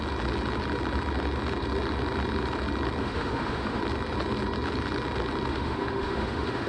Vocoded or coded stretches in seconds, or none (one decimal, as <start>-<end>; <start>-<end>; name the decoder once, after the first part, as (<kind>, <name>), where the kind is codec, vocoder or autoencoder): 3.0-3.8 (autoencoder, DAC-VAE); 5.5-6.7